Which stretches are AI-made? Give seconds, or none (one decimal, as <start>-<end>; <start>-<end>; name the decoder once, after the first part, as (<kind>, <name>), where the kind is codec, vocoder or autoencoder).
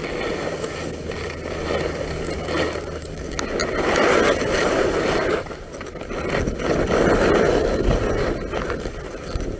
none